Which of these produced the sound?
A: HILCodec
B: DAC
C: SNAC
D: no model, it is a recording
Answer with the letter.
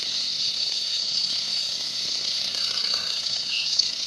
C